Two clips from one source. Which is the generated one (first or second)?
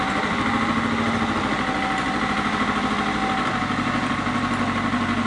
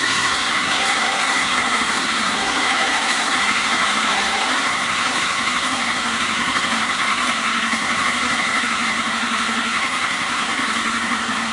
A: second